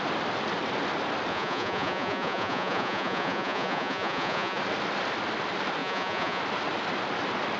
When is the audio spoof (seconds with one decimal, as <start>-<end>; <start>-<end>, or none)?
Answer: 1.3-4.6; 5.8-6.4

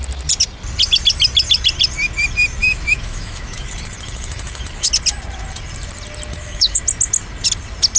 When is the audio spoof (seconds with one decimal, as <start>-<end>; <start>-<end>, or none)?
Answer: 2.6-4.9; 6.3-6.8

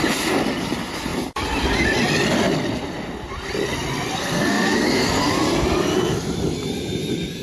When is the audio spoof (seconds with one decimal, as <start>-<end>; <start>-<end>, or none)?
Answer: 4.2-5.3

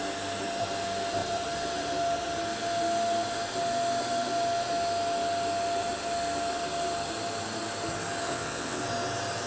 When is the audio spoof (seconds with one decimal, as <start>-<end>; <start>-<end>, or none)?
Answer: 8.2-8.8

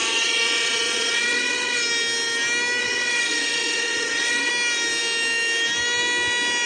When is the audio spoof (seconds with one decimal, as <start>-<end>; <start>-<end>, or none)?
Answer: 0.0-1.8; 2.8-4.5